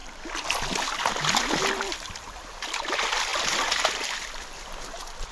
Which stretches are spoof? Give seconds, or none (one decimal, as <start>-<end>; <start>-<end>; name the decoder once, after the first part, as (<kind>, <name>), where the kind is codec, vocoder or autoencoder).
none